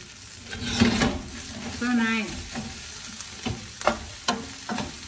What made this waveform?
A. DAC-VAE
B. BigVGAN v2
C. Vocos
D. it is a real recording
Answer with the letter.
D